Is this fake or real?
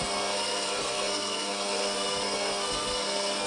fake